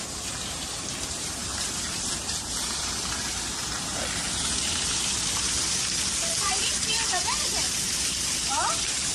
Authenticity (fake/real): fake